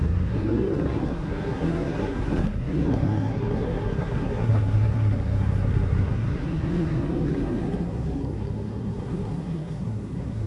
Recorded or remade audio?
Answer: remade